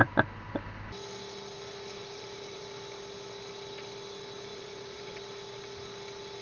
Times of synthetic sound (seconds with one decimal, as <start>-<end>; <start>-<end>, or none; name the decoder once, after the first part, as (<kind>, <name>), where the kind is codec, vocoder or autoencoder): 2.0-2.6 (vocoder, BigVGAN v2); 4.5-5.2